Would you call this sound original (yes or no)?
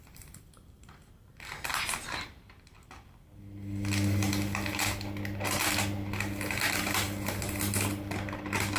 no